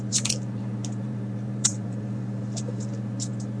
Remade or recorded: remade